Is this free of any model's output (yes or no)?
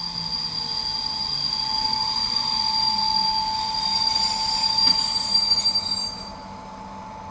yes